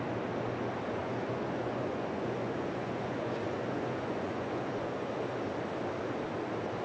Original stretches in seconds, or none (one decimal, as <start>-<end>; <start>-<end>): 0.0-1.0; 5.1-6.8